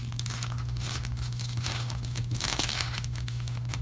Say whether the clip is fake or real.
fake